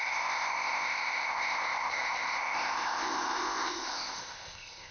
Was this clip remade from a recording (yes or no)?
yes